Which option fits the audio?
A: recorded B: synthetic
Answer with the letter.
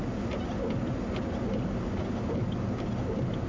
A